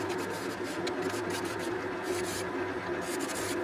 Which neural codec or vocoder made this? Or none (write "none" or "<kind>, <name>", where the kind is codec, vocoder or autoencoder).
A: none